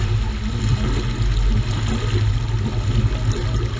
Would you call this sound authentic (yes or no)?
yes